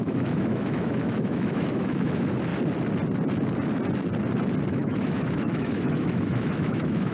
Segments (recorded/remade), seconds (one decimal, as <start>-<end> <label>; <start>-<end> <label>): 0.0-2.5 remade; 2.5-4.7 recorded; 4.7-7.1 remade